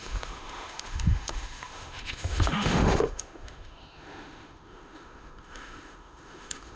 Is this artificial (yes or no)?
yes